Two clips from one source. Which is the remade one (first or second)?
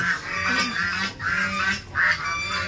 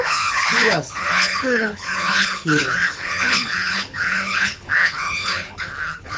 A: second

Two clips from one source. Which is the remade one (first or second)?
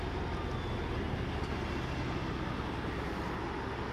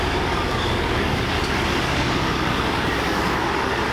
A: second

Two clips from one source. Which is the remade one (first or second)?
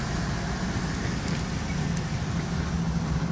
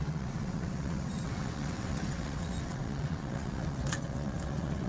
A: second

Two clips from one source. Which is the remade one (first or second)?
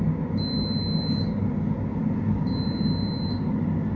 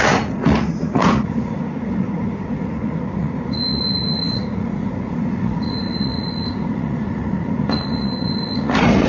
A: second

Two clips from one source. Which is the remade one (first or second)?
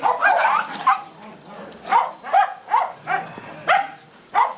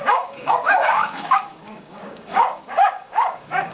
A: second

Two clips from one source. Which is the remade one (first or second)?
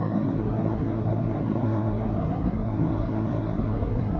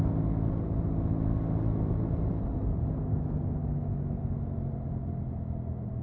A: first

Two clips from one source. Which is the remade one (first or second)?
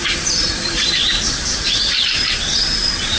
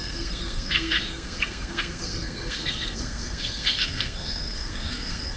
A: second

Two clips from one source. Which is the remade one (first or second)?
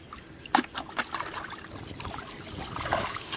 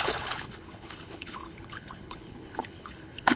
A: second